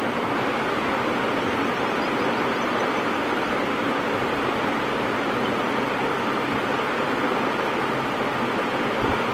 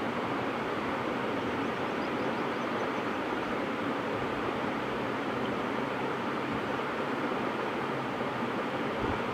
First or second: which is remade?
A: second